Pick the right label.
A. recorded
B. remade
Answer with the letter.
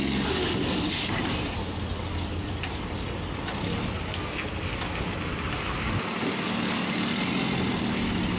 A